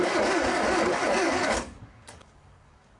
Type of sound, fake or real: fake